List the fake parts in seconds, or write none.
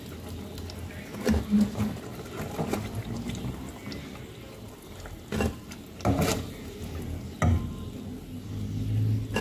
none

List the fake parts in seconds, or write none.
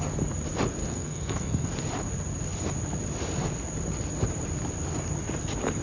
0.8-1.7 (codec, SNAC)